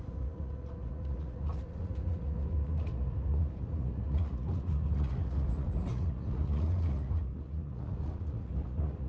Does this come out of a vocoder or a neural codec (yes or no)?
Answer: yes